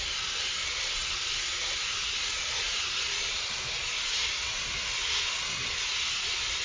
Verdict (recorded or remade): recorded